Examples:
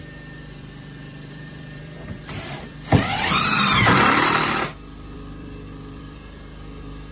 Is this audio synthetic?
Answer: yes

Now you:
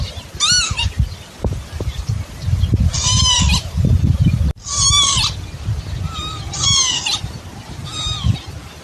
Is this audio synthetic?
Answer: no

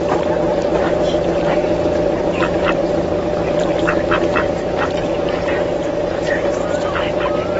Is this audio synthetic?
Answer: yes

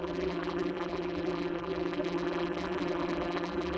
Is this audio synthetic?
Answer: yes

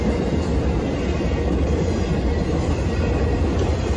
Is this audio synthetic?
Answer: no